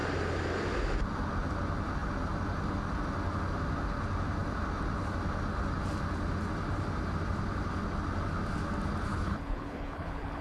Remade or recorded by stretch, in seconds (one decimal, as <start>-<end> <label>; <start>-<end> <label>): 0.0-9.1 recorded; 9.1-10.4 remade